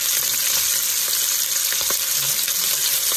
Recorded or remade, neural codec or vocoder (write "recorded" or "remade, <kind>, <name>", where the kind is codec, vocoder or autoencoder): recorded